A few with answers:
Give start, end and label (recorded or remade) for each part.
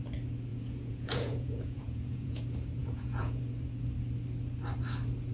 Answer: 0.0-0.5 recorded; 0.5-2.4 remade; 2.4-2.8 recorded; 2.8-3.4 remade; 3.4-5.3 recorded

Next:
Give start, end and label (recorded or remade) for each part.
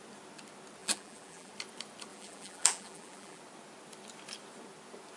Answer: 0.0-0.8 recorded; 0.8-1.5 remade; 1.5-2.1 recorded; 2.1-3.4 remade; 3.4-5.2 recorded